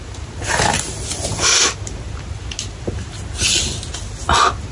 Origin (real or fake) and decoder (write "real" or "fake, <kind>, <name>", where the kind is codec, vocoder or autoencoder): real